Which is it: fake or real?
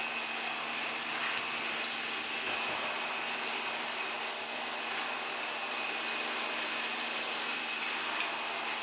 real